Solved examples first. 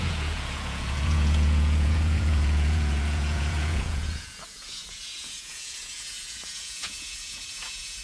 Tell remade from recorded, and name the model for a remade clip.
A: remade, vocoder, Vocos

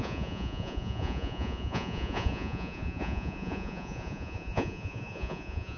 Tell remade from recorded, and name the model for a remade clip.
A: remade, vocoder, Vocos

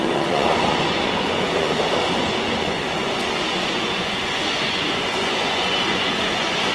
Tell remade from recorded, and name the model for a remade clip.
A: remade, vocoder, Vocos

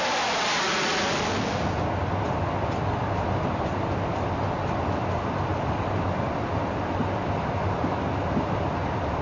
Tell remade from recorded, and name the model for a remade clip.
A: recorded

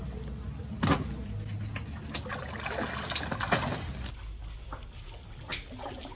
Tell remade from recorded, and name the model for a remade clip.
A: recorded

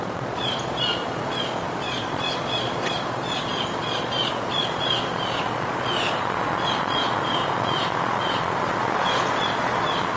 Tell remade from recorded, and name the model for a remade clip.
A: remade, vocoder, Vocos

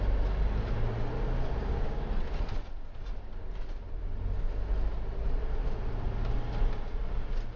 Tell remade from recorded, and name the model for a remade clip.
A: recorded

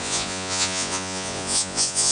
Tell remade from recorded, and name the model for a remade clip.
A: remade, vocoder, Vocos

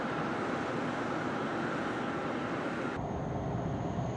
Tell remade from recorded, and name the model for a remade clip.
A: recorded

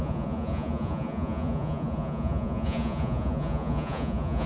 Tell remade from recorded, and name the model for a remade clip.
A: remade, vocoder, Vocos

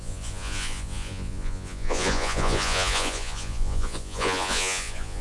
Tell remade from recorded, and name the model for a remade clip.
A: remade, vocoder, Vocos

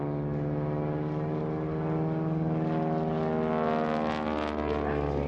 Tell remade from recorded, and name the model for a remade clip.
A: recorded